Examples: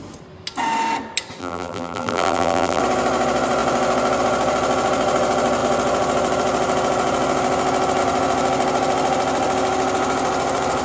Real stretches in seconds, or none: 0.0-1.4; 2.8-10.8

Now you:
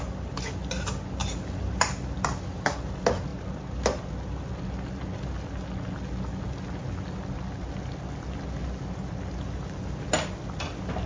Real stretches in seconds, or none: 0.0-1.2; 1.8-11.1